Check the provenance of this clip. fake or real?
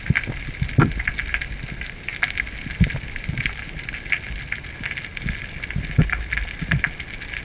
real